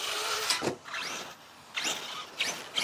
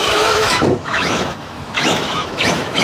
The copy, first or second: second